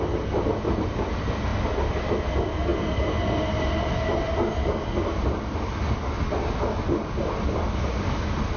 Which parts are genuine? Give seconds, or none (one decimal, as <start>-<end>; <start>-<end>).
0.0-8.6